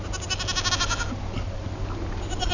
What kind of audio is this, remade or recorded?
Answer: recorded